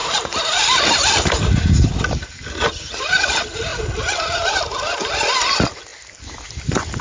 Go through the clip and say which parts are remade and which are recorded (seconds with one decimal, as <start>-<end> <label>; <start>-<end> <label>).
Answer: 0.0-1.9 remade; 1.9-5.9 recorded; 5.9-6.6 remade; 6.6-7.0 recorded